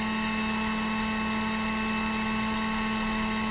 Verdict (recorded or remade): recorded